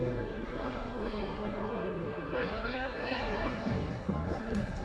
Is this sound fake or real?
fake